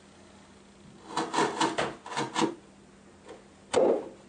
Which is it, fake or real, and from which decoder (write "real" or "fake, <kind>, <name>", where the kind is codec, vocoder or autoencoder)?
real